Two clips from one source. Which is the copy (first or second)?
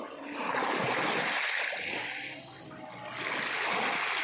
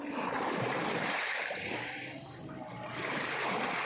second